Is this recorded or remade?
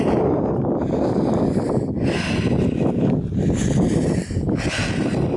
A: recorded